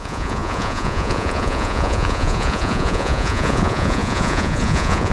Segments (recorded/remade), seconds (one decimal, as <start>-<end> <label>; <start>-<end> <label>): 0.0-5.1 remade